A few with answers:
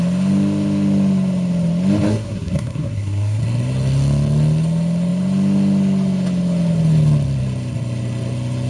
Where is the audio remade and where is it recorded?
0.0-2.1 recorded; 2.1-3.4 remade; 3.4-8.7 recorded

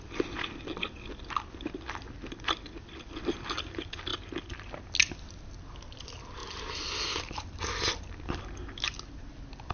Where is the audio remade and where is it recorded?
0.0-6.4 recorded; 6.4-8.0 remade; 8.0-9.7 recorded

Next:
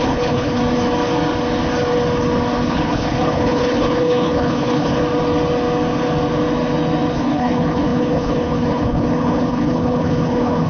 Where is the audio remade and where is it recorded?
0.0-0.6 remade; 0.6-2.7 recorded; 2.7-5.0 remade; 5.0-7.1 recorded; 7.1-10.7 remade